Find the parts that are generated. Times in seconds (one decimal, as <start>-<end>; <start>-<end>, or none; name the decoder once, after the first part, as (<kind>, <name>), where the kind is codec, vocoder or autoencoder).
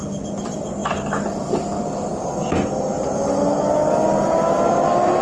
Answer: none